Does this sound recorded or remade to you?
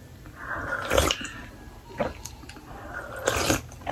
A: recorded